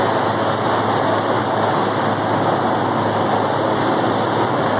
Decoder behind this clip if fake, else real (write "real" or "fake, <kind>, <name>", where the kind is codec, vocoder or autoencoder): real